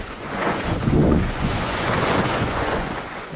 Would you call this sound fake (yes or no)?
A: yes